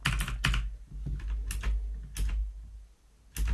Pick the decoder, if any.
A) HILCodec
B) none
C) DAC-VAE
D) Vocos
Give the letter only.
B